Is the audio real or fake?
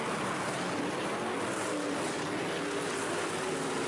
real